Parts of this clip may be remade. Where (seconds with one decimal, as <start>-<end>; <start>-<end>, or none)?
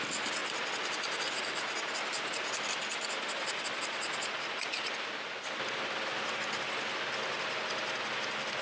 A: none